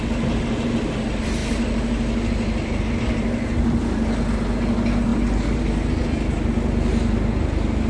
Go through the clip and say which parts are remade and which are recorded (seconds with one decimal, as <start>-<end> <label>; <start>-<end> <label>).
0.0-7.9 recorded